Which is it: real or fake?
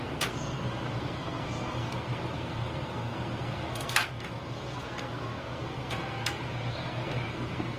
fake